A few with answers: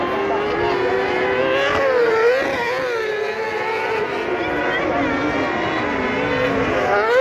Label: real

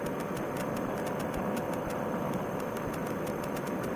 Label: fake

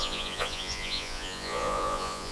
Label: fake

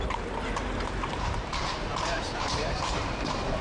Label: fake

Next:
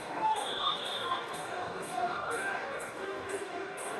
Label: fake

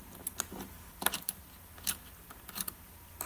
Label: real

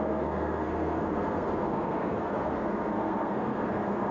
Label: fake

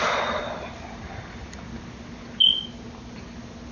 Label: real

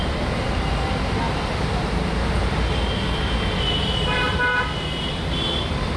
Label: real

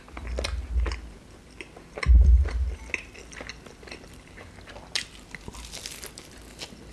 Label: real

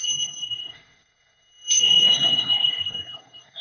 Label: fake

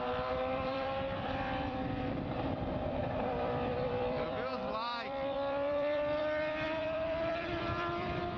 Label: fake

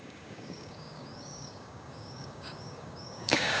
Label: fake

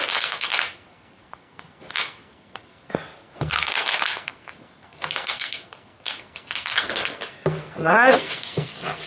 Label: fake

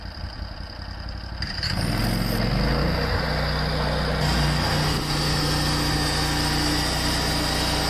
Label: real